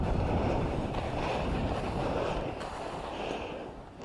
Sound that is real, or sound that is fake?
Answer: real